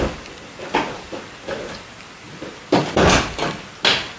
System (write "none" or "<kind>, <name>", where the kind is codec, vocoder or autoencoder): none